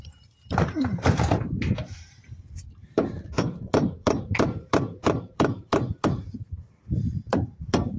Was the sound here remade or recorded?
remade